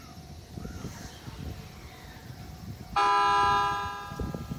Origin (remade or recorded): recorded